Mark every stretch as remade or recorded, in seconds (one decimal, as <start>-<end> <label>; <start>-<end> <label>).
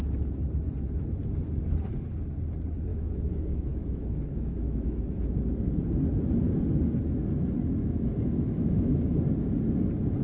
0.0-2.9 recorded; 2.9-5.1 remade; 5.1-7.8 recorded; 7.8-9.2 remade; 9.2-10.2 recorded